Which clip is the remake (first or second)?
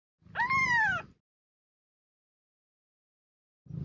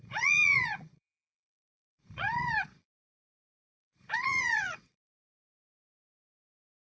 second